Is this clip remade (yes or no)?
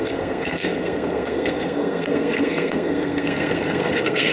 yes